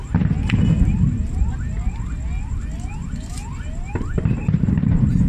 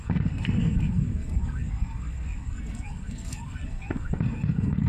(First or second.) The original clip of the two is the first